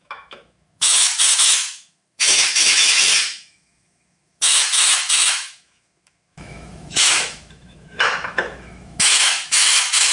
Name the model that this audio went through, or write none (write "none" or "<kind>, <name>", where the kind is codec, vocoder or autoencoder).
autoencoder, DAC-VAE